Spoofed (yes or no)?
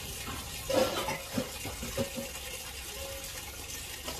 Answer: no